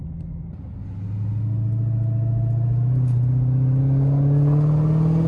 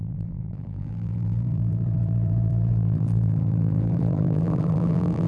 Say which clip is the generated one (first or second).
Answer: second